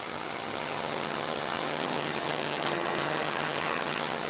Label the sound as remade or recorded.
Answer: remade